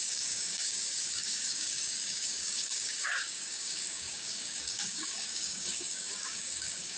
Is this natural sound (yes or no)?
no